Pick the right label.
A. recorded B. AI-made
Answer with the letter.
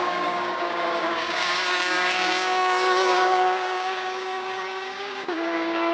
B